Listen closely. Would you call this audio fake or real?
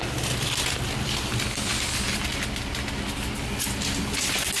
real